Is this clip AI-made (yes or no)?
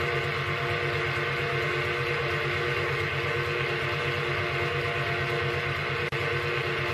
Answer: no